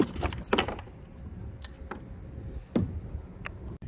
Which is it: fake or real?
real